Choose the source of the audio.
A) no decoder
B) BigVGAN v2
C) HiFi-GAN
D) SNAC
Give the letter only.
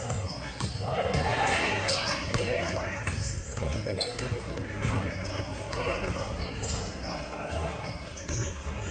D